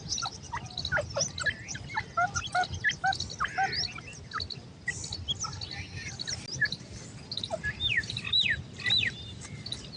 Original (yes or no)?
yes